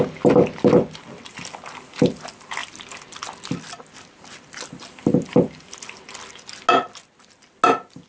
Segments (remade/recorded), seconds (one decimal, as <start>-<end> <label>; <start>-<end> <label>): 0.0-8.1 recorded